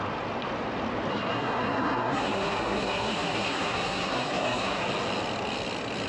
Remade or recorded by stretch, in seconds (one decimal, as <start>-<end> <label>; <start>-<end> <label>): 0.0-1.1 recorded; 1.1-4.8 remade; 4.8-6.1 recorded